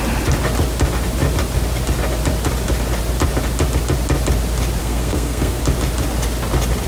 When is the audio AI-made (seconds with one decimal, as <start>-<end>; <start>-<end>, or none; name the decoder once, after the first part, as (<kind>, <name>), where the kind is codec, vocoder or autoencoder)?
4.8-5.6 (codec, SNAC)